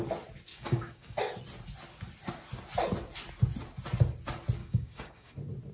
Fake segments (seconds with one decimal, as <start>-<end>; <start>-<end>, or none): 0.5-1.2; 4.6-5.3